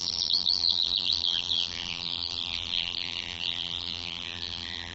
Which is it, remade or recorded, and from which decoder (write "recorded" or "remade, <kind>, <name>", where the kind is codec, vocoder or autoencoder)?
remade, vocoder, BigVGAN v2